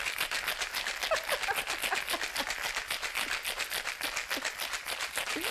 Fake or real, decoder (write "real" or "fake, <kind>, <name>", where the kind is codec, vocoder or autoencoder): real